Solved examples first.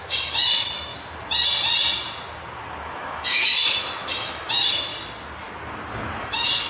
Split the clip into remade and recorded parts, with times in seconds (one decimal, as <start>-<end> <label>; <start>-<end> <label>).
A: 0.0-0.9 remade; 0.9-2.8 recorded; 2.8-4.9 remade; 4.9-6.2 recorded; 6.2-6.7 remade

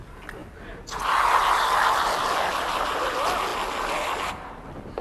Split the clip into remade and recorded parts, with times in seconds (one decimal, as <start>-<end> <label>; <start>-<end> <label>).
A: 0.0-5.0 recorded

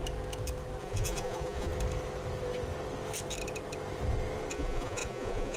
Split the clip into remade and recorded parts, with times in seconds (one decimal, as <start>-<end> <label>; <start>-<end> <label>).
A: 0.0-0.8 recorded; 0.8-1.7 remade; 1.7-4.5 recorded; 4.5-5.6 remade

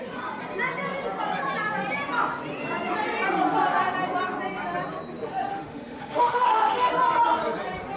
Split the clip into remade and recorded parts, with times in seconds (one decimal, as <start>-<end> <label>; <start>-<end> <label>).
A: 0.0-5.5 recorded; 5.5-6.9 remade; 6.9-8.0 recorded

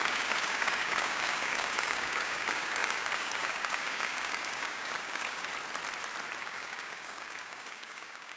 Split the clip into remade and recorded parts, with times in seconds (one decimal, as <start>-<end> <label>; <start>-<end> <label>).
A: 0.0-5.5 remade; 5.5-6.4 recorded; 6.4-8.4 remade